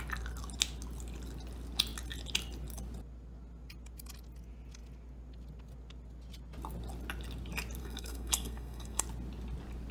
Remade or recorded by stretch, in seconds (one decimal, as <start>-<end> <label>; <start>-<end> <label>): 0.0-7.8 recorded; 7.8-9.0 remade; 9.0-9.9 recorded